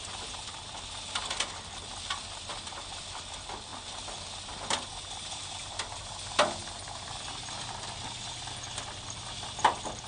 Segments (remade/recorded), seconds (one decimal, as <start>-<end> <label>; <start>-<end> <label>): 0.0-10.1 recorded

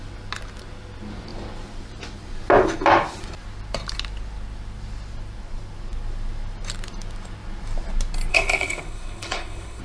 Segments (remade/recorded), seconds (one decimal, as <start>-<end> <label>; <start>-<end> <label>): 0.0-8.3 recorded; 8.3-9.8 remade

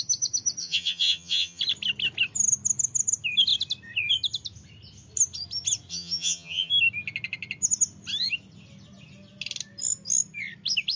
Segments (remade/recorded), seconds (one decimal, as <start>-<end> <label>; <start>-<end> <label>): 0.0-0.6 recorded; 0.6-1.6 remade; 1.6-5.9 recorded; 5.9-6.7 remade; 6.7-11.0 recorded

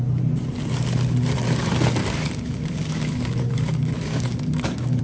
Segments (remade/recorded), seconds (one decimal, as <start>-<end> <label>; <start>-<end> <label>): 0.0-2.0 recorded; 2.0-5.0 remade

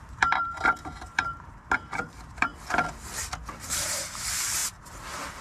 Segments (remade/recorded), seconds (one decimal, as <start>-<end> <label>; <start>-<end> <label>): 0.0-2.5 remade; 2.5-3.7 recorded; 3.7-5.4 remade

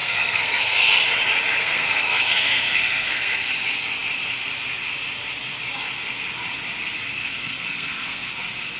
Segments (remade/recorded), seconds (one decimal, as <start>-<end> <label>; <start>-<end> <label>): 0.0-0.9 remade; 0.9-1.6 recorded; 1.6-3.5 remade; 3.5-7.2 recorded; 7.2-8.3 remade; 8.3-8.8 recorded

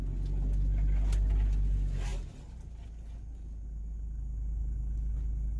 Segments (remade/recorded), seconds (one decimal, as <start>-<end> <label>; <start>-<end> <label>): 0.0-5.6 recorded